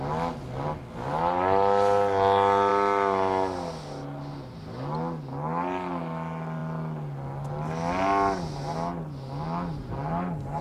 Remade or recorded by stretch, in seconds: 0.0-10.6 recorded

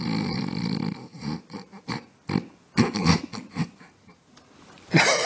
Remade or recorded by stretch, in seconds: 0.0-1.1 recorded; 1.1-1.9 remade; 1.9-3.6 recorded; 3.6-5.3 remade

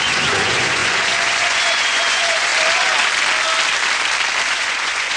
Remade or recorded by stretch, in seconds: 0.0-2.5 remade; 2.5-4.5 recorded; 4.5-5.2 remade

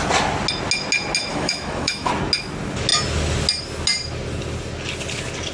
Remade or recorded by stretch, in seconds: 0.0-1.3 recorded; 1.3-2.1 remade; 2.1-5.5 recorded

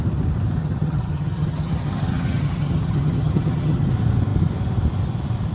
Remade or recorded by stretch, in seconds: 0.0-0.6 recorded; 0.6-3.9 remade; 3.9-5.5 recorded

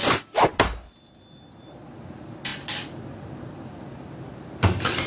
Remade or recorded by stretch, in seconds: 0.0-2.5 remade; 2.5-4.6 recorded; 4.6-5.1 remade